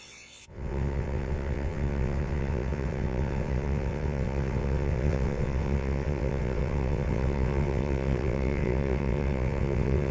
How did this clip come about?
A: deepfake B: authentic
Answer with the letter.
A